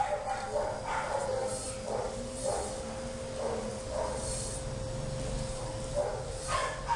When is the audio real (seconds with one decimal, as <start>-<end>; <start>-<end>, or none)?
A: 0.0-7.0